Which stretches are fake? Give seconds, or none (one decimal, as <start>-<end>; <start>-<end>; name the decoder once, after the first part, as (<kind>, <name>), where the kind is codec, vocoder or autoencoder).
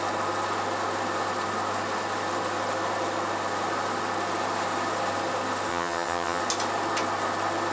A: 5.7-6.4 (vocoder, HiFi-GAN)